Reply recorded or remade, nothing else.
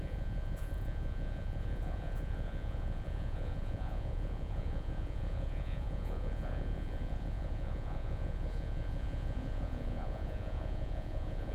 remade